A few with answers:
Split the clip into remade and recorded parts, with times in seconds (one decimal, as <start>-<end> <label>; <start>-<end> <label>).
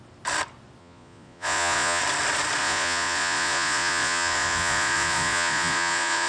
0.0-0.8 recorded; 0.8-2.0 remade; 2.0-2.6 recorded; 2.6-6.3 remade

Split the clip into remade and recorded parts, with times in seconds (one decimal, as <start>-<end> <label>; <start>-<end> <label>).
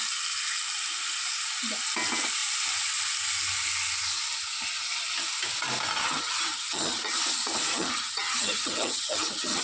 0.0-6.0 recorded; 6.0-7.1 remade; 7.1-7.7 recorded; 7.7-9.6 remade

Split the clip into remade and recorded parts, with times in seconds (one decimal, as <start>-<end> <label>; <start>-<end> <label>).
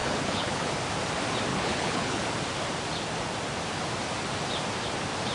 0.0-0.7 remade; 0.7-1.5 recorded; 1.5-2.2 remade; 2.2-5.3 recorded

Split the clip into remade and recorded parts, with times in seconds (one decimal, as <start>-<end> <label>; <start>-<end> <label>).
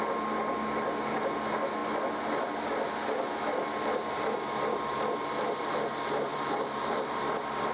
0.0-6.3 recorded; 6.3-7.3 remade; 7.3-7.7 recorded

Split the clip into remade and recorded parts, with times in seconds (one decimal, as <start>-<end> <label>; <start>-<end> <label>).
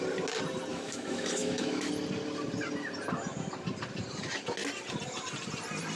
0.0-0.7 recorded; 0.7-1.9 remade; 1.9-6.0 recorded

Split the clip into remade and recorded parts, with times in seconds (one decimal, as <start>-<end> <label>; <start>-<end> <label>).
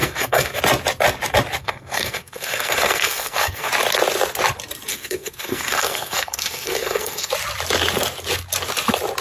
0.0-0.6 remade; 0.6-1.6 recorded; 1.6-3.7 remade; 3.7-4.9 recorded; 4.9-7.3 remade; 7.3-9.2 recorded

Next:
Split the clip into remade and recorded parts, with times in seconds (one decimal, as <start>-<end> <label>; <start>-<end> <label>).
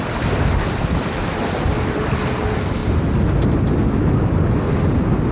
0.0-5.3 recorded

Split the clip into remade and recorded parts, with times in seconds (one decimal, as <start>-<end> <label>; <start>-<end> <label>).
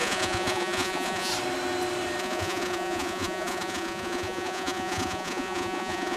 0.0-1.3 remade; 1.3-2.2 recorded; 2.2-6.2 remade